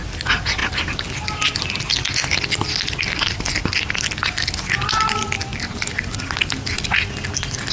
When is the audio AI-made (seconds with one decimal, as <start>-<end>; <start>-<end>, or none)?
5.5-6.2